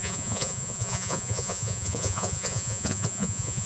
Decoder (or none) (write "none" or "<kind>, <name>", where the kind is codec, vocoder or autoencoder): vocoder, Vocos